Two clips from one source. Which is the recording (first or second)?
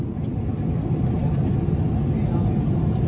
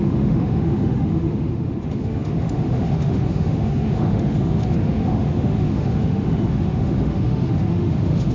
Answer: first